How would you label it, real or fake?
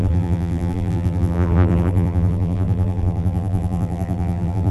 fake